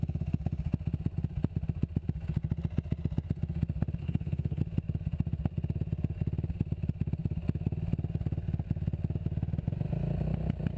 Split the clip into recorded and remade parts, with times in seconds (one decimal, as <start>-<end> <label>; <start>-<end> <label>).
0.0-4.0 recorded; 4.0-4.6 remade; 4.6-10.8 recorded